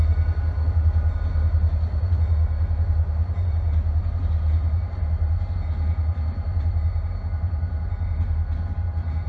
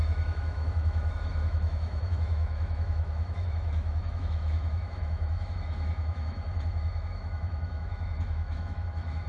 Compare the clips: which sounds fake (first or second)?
second